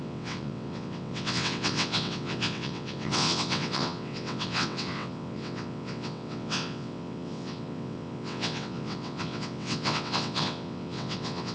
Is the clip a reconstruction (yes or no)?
yes